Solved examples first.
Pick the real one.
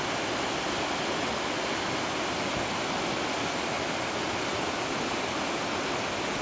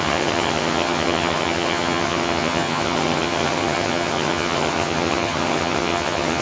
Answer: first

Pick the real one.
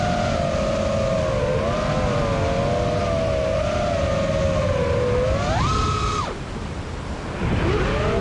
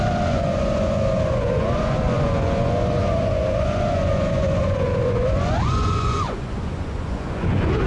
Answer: first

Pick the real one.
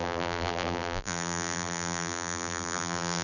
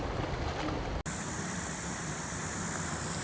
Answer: second